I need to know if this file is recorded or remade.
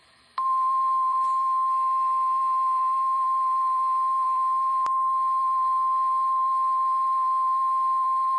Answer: remade